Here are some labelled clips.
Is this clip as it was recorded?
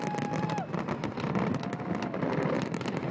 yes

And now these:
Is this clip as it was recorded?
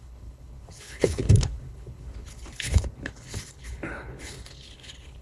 no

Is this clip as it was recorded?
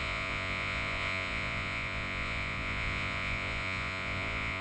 no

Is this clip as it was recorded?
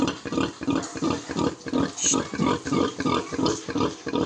yes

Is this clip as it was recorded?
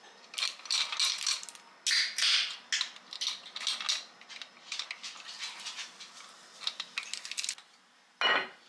yes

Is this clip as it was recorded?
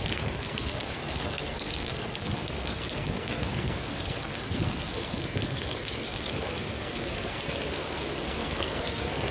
no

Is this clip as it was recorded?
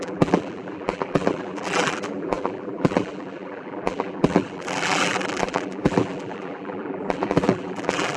no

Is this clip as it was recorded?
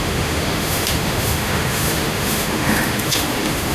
no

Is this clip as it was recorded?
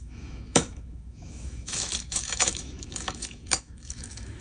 no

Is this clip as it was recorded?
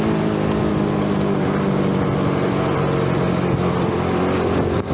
yes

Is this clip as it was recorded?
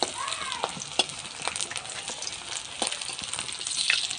yes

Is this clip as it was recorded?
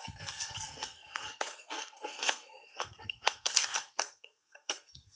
no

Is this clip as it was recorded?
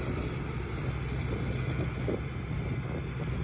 yes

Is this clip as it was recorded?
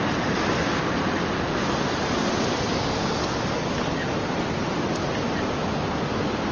yes